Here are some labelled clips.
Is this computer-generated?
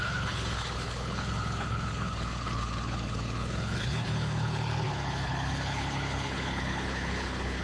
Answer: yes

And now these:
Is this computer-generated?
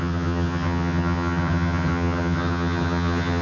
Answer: yes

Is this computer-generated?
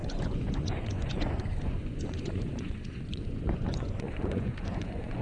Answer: yes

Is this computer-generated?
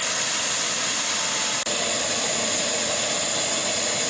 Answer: no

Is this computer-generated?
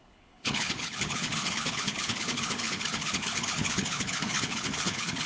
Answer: yes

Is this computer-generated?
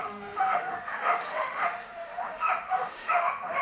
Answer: yes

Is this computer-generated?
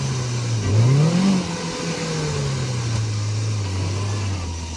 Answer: no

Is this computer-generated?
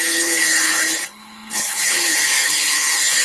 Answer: yes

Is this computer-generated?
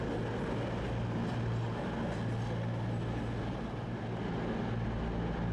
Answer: no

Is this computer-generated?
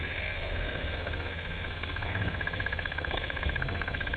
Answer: yes